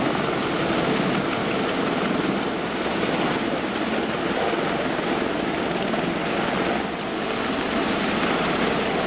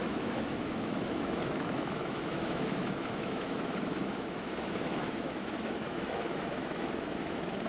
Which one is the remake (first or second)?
second